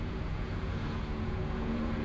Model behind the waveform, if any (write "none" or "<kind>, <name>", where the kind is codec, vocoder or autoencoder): vocoder, Vocos